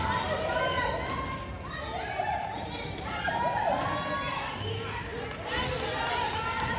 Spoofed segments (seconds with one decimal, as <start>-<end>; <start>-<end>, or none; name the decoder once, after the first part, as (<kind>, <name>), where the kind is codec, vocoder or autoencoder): none